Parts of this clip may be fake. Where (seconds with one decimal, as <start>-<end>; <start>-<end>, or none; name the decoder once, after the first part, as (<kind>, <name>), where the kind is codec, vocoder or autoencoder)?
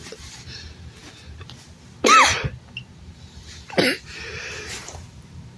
0.0-1.0 (vocoder, BigVGAN v2); 4.4-5.6